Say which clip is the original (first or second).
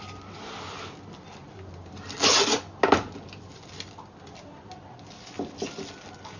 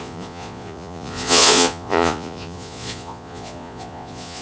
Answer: first